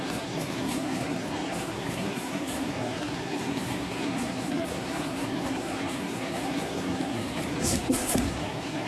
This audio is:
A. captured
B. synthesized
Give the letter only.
B